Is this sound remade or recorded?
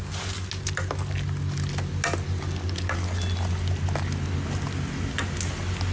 recorded